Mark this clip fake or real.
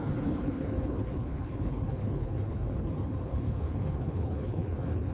fake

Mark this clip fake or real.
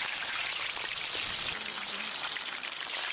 fake